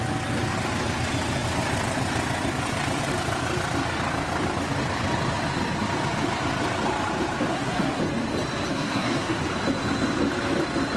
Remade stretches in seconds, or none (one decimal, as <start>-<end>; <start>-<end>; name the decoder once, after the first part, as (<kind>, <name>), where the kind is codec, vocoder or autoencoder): 7.5-8.0 (codec, SNAC); 8.7-9.4